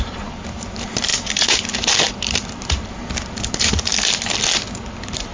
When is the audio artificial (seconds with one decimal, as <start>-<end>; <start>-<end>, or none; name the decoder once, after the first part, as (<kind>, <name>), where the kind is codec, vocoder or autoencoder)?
0.0-3.0 (vocoder, BigVGAN v2); 3.5-3.9; 4.8-5.3